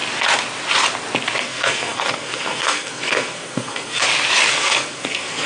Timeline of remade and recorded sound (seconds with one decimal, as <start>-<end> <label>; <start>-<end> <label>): 0.0-1.4 recorded; 1.4-4.0 remade; 4.0-4.5 recorded; 4.5-5.5 remade